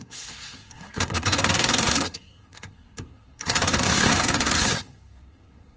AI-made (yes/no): yes